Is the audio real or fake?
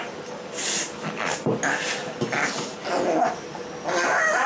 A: real